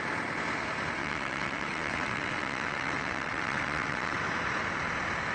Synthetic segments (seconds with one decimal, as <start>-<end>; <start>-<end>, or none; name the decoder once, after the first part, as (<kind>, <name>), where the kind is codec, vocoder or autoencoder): 1.0-4.2 (vocoder, WaveNeXt)